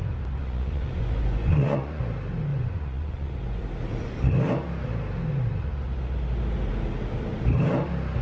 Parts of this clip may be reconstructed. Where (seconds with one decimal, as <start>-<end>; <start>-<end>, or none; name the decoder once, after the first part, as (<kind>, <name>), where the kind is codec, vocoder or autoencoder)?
0.4-2.0 (vocoder, Vocos); 2.5-3.6